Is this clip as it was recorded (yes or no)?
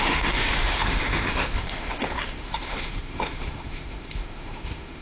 no